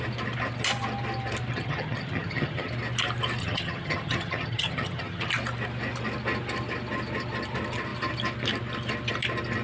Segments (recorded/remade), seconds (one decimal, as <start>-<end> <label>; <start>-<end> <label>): 0.0-1.5 recorded; 1.5-2.7 remade; 2.7-3.4 recorded; 3.4-5.3 remade; 5.3-9.6 recorded